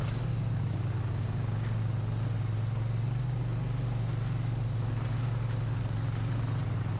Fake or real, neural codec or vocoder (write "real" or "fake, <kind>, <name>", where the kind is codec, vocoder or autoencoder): real